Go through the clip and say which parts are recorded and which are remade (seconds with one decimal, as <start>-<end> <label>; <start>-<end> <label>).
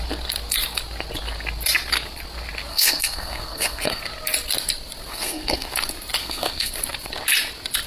0.0-2.7 recorded; 2.7-4.0 remade; 4.0-5.1 recorded; 5.1-5.7 remade; 5.7-6.2 recorded; 6.2-6.7 remade; 6.7-7.9 recorded